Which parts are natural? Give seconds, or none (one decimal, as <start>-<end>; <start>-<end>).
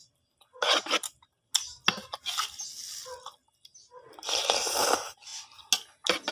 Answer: 1.5-3.7; 4.8-6.3